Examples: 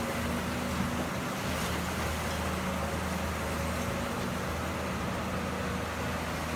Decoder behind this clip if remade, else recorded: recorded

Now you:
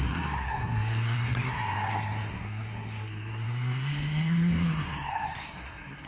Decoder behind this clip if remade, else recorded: remade, codec, SNAC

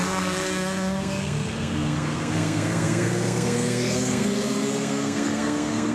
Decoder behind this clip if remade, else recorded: remade, codec, SNAC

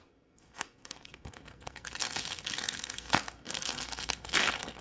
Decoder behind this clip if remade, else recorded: remade, codec, SNAC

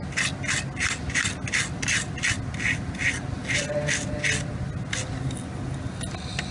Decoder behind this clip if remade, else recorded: recorded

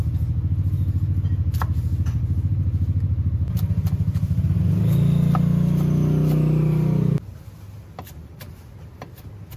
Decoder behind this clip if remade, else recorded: recorded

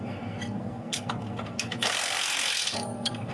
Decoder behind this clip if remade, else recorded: remade, codec, SNAC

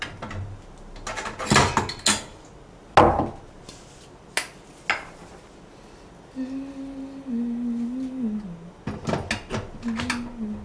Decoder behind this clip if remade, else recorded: recorded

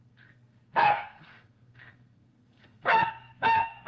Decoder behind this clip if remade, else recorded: remade, codec, SNAC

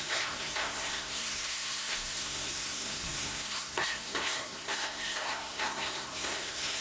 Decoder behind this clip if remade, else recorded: remade, codec, SNAC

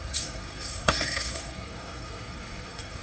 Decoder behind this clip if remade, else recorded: remade, codec, SNAC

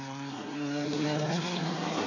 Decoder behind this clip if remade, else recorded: remade, codec, SNAC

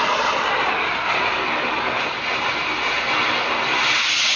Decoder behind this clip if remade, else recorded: recorded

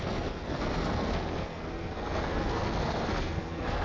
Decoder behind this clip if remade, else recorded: remade, codec, SNAC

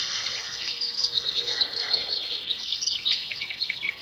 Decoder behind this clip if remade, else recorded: remade, codec, SNAC